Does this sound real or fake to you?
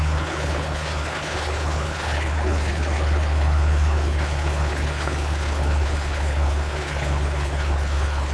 fake